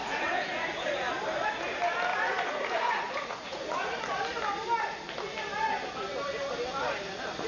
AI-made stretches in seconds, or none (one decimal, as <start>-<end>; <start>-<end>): 0.0-1.1; 2.1-4.0

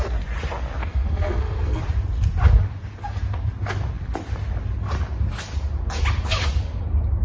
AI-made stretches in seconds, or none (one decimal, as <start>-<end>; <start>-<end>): 0.8-1.8

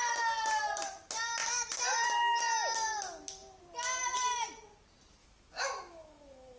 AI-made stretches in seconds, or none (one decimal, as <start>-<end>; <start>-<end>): 5.2-6.6

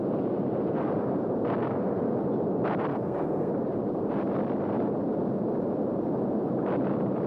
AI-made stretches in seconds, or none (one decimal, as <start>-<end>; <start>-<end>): 2.9-3.5

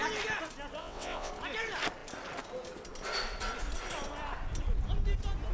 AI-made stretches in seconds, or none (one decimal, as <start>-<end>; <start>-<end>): 0.8-1.3

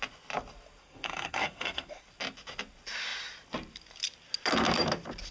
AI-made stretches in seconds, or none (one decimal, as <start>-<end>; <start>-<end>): 0.8-2.0

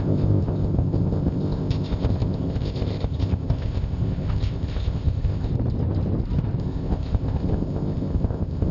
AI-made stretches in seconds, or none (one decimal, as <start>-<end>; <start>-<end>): 0.0-5.5; 6.6-8.7

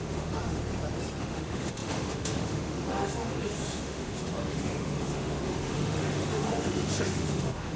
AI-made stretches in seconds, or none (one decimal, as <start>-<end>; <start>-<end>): 0.0-0.6; 1.2-7.8